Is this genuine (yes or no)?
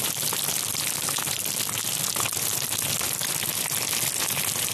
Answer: yes